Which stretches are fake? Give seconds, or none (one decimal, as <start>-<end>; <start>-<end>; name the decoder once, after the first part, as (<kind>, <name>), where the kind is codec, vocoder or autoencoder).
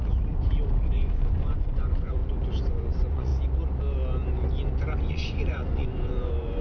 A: 0.8-2.2 (vocoder, Vocos); 2.7-3.3; 5.1-6.6